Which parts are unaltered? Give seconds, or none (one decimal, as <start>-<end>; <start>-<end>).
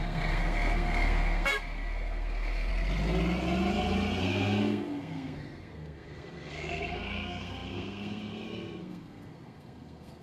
2.7-4.2